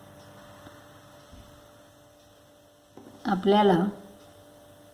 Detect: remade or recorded recorded